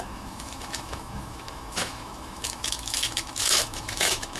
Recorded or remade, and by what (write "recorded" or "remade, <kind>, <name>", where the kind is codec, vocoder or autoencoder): remade, autoencoder, DAC-VAE